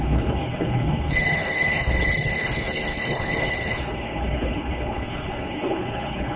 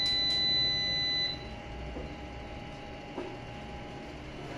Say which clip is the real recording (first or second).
second